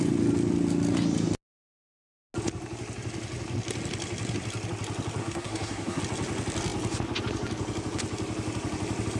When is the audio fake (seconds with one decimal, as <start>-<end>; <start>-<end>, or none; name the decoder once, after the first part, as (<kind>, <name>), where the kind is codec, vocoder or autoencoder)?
5.2-6.0 (codec, SNAC)